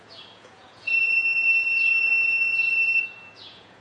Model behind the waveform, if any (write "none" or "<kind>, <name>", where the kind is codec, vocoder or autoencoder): vocoder, Vocos